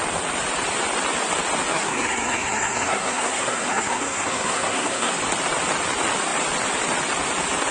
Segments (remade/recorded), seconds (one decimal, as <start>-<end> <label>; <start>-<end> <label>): 0.0-1.7 recorded; 1.7-5.1 remade; 5.1-7.7 recorded